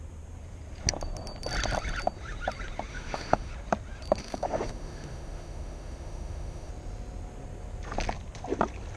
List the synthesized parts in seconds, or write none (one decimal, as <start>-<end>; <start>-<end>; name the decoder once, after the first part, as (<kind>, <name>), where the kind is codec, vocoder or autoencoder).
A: 2.9-3.5 (autoencoder, DAC-VAE); 4.2-6.7